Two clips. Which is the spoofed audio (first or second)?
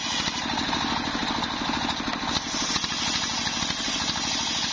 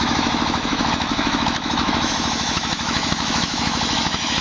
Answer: second